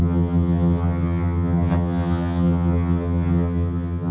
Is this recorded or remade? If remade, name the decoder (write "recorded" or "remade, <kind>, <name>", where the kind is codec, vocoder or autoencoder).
remade, vocoder, HiFi-GAN